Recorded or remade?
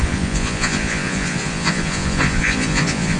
remade